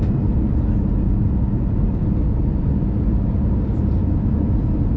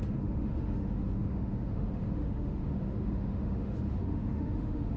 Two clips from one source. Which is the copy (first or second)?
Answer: second